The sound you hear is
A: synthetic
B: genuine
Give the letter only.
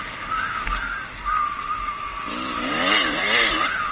B